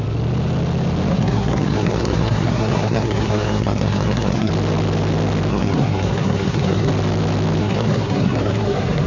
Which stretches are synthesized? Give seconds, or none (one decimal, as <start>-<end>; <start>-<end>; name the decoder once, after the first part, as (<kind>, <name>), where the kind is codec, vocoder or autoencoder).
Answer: 1.1-4.5 (codec, SNAC); 5.5-6.9; 7.6-9.1